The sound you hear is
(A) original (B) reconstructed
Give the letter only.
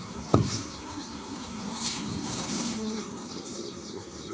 B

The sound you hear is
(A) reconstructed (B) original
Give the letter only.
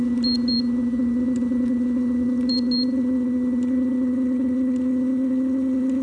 B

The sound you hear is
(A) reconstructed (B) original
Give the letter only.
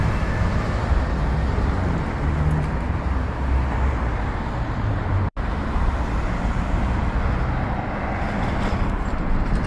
B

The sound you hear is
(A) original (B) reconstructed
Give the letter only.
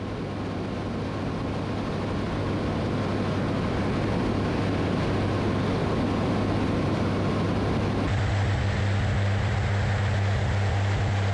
A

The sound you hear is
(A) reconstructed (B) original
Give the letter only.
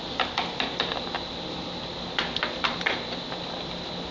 B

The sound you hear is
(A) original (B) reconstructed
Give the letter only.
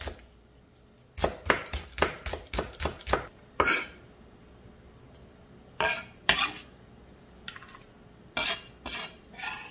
A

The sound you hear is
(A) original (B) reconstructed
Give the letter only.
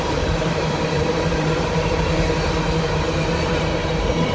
B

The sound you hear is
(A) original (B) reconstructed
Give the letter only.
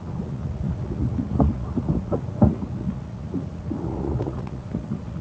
B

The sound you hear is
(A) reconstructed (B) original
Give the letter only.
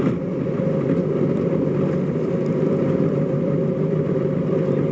A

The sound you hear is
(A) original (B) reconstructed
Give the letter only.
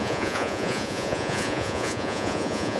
B